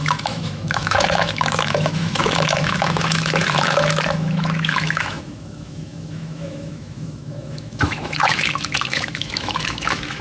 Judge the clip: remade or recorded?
remade